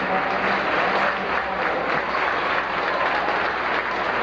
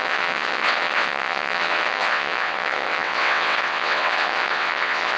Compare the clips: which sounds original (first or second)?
first